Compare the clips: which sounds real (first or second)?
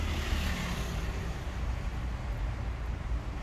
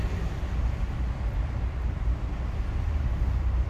first